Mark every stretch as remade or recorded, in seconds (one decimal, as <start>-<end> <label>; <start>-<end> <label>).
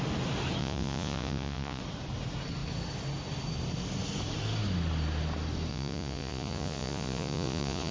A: 0.0-0.6 recorded; 0.6-1.8 remade; 1.8-5.7 recorded; 5.7-7.9 remade